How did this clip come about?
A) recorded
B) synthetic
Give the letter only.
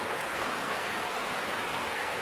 B